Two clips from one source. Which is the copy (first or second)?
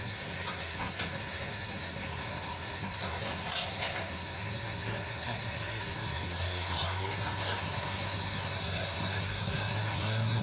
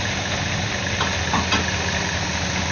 first